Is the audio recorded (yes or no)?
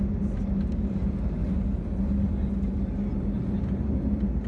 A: yes